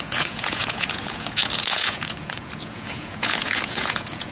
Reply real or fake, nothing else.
fake